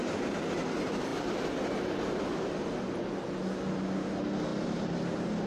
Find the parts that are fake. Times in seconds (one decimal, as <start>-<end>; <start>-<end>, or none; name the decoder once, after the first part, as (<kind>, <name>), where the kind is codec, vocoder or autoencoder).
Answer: none